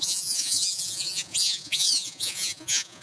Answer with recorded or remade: remade